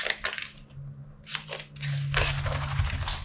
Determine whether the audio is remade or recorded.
recorded